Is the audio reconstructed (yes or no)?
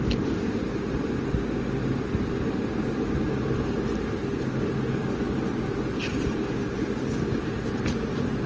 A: no